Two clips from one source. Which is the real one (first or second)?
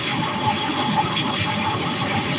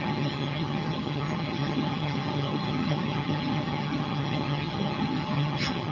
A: first